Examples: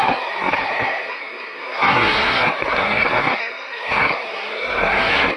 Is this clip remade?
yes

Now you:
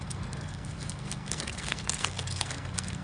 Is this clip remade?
yes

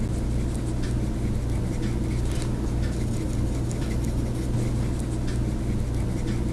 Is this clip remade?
no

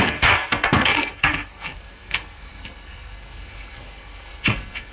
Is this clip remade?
yes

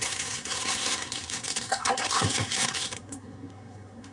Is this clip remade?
yes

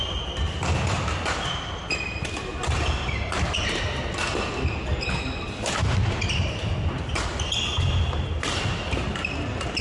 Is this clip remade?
no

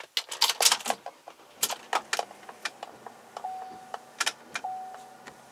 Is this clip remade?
no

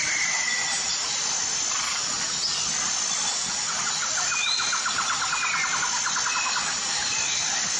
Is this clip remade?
no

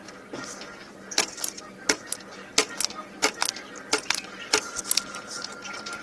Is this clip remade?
no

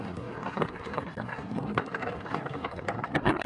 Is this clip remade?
yes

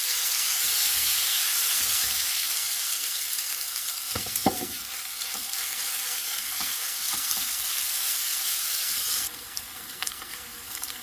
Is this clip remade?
yes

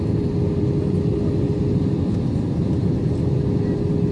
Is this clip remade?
no